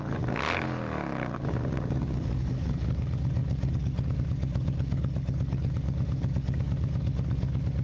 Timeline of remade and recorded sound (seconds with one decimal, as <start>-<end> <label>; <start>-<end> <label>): 0.0-7.8 remade